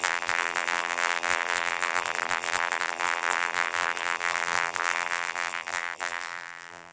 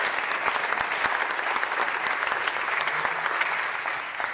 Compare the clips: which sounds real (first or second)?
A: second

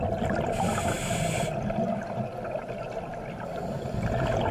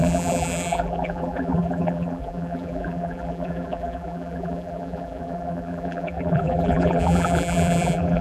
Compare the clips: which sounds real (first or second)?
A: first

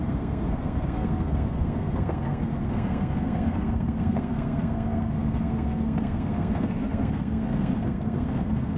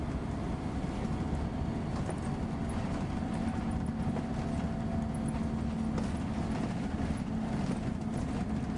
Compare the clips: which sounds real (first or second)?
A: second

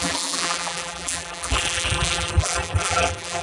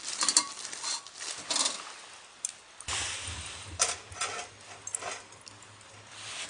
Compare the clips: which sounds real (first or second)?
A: second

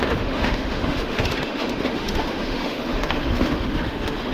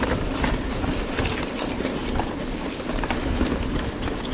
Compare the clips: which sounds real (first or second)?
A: second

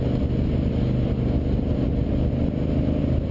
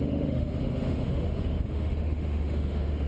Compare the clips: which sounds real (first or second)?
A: first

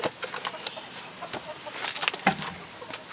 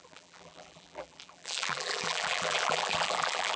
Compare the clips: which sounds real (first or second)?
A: first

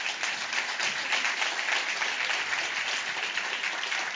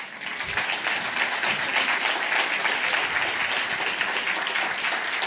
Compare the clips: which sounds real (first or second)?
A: second